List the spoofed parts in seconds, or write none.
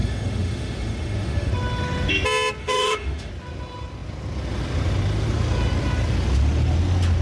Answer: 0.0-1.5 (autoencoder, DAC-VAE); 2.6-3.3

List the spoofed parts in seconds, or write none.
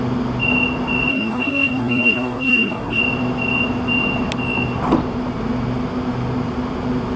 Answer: 1.1-3.0 (codec, SNAC)